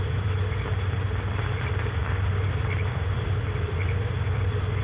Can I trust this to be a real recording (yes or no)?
no